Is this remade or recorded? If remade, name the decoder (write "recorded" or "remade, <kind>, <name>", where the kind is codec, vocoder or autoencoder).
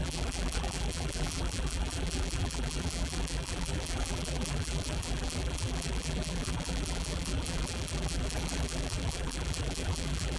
remade, vocoder, BigVGAN v2